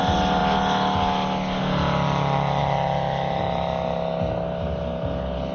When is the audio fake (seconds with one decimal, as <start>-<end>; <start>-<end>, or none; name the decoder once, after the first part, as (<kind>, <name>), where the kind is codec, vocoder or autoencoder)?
none